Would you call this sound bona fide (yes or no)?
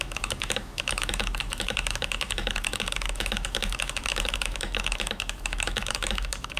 no